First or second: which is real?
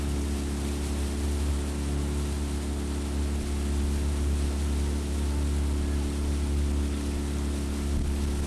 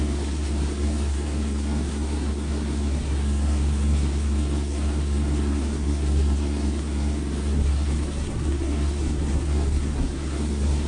first